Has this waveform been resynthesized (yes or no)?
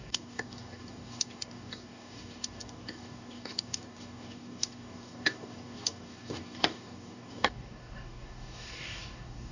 yes